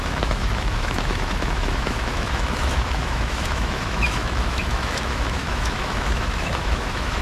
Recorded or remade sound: remade